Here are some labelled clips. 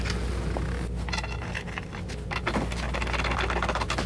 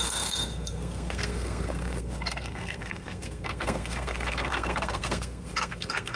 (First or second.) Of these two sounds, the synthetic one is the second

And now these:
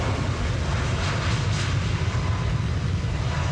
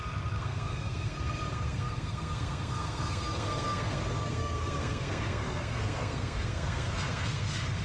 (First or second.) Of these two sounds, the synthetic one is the second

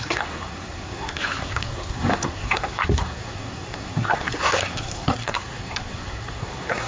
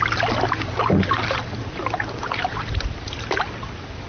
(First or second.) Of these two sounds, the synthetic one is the first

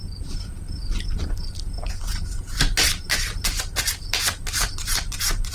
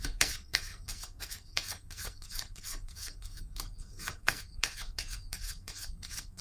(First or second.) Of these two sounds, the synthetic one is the second